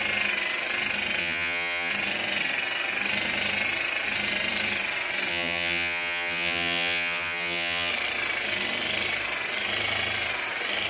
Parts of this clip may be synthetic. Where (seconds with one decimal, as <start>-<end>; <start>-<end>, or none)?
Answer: 1.2-1.9; 5.3-7.9